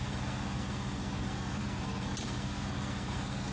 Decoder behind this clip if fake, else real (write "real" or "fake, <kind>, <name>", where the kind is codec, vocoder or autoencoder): fake, codec, SNAC